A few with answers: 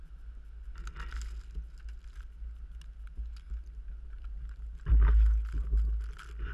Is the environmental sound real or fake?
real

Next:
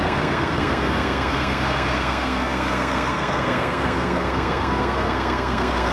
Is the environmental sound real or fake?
fake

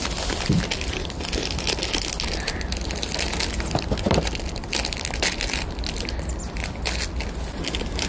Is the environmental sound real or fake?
real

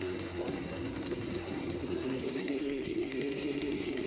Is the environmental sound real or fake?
fake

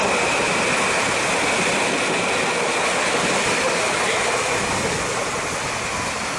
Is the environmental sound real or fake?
real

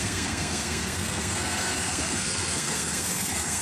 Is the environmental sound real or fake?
fake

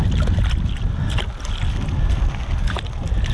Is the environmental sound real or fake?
real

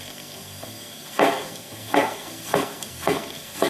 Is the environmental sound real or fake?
fake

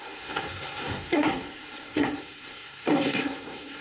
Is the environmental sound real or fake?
fake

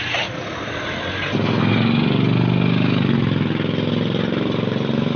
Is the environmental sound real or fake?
real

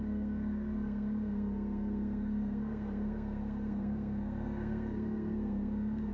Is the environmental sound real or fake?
fake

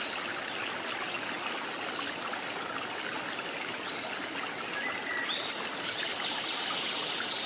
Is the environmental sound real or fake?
real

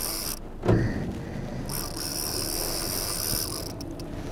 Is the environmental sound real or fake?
real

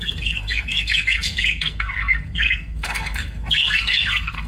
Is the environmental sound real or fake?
fake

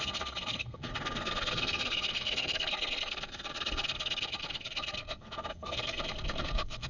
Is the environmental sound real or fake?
fake